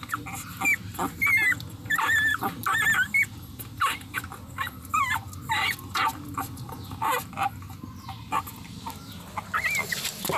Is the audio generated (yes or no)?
no